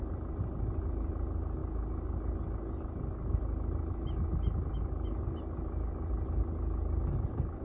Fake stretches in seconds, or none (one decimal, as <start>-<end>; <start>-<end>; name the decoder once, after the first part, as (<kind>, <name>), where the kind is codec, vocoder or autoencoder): none